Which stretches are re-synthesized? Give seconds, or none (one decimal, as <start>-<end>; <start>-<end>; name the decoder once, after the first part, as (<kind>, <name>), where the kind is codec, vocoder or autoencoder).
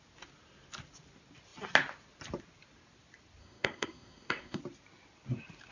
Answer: 3.4-4.6 (codec, SNAC)